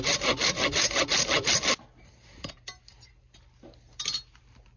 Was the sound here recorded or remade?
recorded